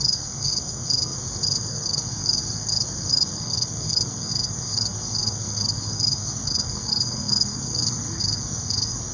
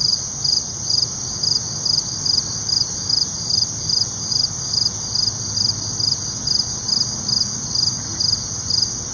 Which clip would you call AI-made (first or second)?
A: first